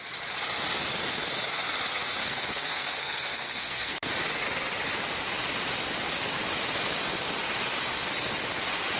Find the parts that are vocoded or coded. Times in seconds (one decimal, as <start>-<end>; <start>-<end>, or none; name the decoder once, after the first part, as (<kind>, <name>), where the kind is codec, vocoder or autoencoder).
2.2-4.1 (codec, SNAC)

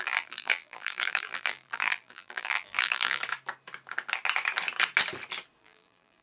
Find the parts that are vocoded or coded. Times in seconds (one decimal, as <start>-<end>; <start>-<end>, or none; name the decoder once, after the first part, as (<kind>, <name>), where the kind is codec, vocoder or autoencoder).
0.0-3.2 (vocoder, BigVGAN v2); 5.6-6.2